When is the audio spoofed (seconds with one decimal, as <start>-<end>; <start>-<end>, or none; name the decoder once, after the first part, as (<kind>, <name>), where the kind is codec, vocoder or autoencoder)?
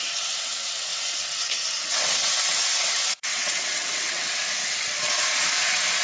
0.0-5.2 (vocoder, WaveNeXt)